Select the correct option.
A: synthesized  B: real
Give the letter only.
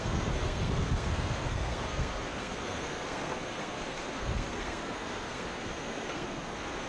A